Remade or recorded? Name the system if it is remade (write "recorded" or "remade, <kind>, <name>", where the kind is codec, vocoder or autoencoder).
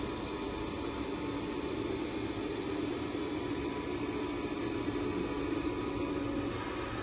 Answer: recorded